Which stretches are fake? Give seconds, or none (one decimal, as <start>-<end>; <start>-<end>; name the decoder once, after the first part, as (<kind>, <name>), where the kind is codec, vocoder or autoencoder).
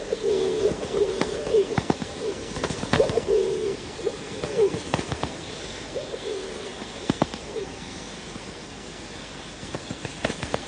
0.0-10.7 (codec, SNAC)